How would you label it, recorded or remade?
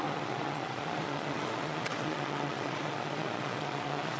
remade